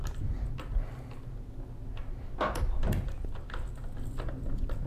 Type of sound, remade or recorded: recorded